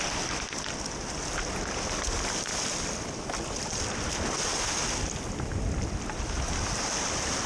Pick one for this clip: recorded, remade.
recorded